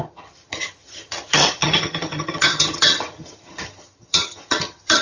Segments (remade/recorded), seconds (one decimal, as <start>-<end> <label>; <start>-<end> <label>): 0.0-5.0 remade